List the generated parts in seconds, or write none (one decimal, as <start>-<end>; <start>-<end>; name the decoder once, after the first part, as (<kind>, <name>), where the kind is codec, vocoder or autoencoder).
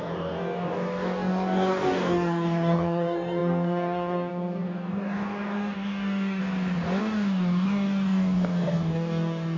0.0-6.4 (codec, DAC); 7.0-9.6